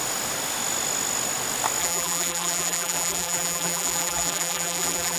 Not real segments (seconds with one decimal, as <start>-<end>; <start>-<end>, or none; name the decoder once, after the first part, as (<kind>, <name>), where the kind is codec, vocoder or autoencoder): 1.8-5.2 (vocoder, BigVGAN v2)